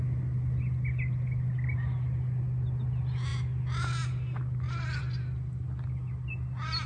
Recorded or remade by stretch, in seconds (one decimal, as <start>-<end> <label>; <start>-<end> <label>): 0.0-6.9 recorded